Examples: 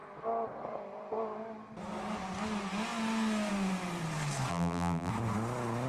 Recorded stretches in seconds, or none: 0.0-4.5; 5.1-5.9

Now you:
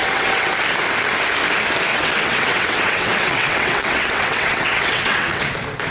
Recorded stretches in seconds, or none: 0.5-1.9; 5.4-5.9

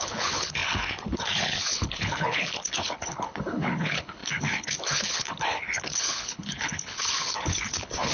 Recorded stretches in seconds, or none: none